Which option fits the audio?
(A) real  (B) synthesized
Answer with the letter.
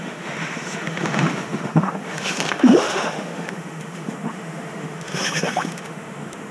B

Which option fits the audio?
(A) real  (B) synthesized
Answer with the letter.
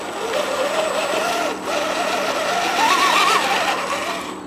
A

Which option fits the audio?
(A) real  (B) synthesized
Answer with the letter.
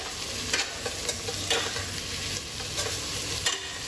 A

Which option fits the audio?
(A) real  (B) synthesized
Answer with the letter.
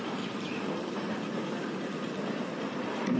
B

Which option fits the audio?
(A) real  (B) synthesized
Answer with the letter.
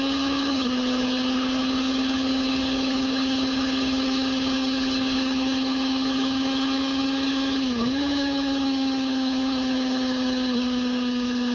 B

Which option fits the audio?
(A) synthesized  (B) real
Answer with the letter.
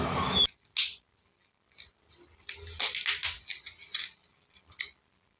B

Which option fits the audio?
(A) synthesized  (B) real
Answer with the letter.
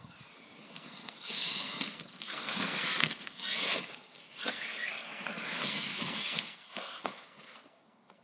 A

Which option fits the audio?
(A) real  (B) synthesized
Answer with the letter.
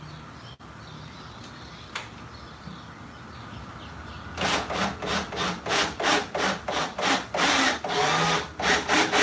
A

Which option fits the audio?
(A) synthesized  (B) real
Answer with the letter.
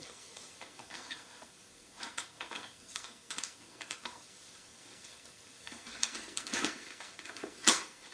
A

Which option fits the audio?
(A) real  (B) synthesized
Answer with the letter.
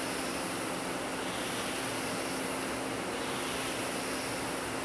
A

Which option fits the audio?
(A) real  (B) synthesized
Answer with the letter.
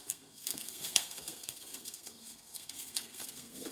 B